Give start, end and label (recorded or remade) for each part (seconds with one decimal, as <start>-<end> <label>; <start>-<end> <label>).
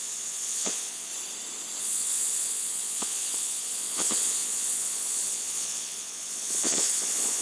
0.0-1.1 remade; 1.1-1.8 recorded; 1.8-7.4 remade